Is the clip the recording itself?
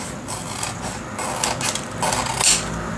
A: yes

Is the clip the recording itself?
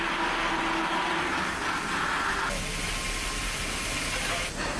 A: yes